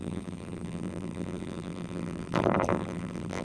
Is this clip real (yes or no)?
no